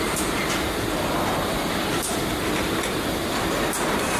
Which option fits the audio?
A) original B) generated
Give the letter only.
A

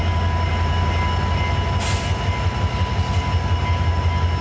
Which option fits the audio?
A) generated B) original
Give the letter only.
B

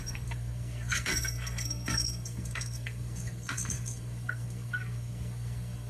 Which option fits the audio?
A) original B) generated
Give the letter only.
B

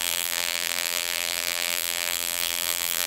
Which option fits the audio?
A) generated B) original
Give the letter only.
A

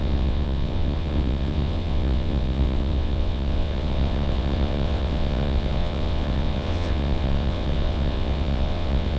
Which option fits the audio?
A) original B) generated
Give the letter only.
B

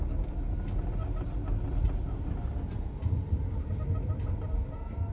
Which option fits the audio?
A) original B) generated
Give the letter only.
A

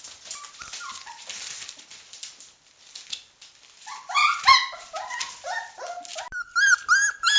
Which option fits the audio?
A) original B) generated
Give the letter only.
A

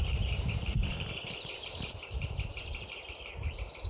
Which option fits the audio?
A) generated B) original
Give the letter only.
A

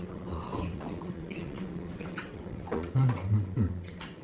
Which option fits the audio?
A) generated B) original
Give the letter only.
A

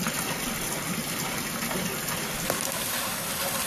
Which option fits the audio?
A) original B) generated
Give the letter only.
A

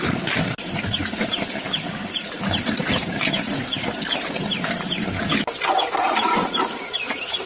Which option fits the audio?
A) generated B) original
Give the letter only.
A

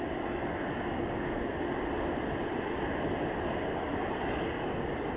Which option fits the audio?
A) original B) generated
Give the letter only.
A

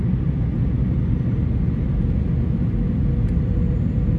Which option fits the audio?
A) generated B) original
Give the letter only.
B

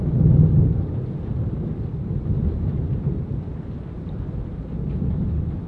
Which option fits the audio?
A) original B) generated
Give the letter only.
A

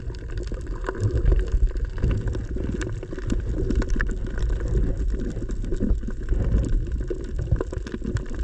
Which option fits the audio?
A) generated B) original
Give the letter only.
B